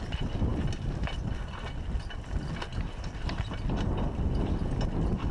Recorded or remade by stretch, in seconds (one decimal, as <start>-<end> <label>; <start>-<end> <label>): 0.0-5.3 recorded